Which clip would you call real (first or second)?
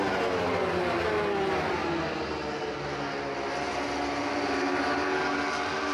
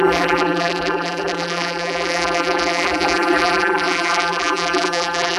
first